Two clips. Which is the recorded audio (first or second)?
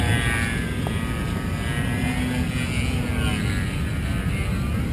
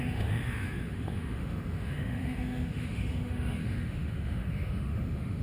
first